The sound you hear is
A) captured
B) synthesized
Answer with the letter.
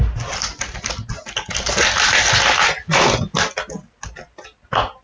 A